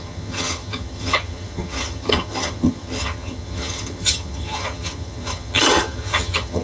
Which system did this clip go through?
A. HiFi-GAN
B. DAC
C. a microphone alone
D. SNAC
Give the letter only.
A